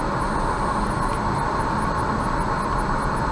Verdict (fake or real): real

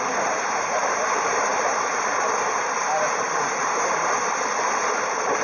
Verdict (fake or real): fake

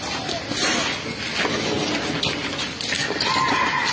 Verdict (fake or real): real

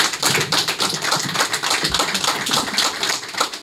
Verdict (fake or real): real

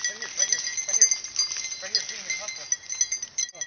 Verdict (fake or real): real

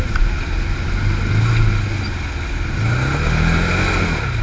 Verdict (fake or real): real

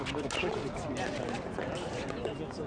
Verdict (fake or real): real